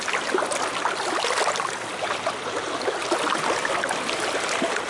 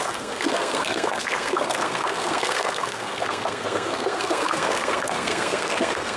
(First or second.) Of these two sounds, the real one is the first